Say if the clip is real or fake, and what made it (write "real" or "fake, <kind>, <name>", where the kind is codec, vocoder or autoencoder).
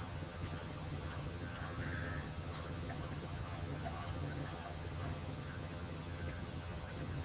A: fake, vocoder, HiFi-GAN